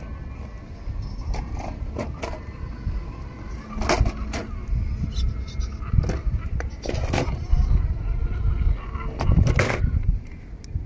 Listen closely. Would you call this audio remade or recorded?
recorded